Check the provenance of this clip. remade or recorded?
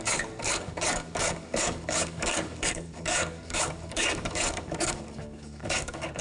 remade